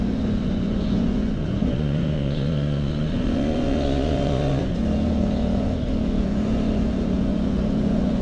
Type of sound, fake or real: fake